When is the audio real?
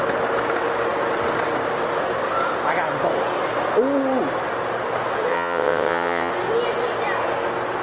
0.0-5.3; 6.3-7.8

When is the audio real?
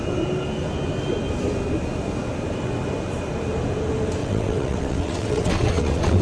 0.0-4.2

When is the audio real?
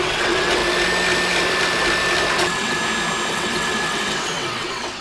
0.6-2.3; 2.8-3.3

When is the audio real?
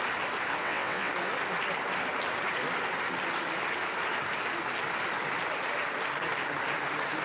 0.0-0.6; 1.1-7.2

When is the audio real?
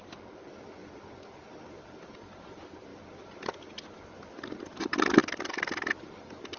0.0-6.6